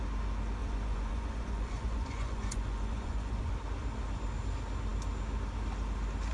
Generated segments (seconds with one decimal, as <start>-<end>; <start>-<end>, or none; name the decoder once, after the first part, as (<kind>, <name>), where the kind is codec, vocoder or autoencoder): 0.6-3.5 (vocoder, Vocos)